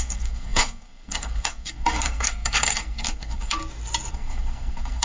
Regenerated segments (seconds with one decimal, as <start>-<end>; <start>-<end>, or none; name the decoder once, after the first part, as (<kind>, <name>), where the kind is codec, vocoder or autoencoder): 0.0-3.6 (codec, SNAC); 4.1-5.0